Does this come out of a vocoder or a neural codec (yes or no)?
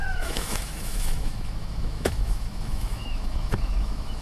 yes